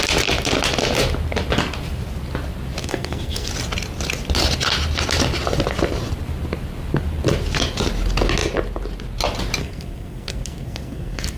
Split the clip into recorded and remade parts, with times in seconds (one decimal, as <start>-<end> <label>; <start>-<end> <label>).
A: 0.0-2.8 recorded; 2.8-3.5 remade; 3.5-9.6 recorded; 9.6-11.4 remade